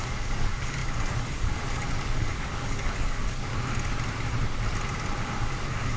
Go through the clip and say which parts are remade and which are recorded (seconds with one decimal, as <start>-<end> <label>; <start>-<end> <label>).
0.0-3.5 remade; 3.5-5.2 recorded; 5.2-6.0 remade